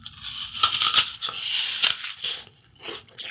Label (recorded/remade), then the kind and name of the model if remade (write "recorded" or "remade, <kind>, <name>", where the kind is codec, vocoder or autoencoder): recorded